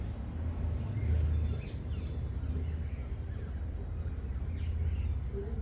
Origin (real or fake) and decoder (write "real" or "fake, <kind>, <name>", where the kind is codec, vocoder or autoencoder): real